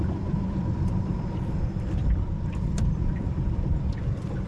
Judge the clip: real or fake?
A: fake